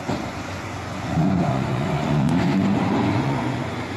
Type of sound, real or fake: fake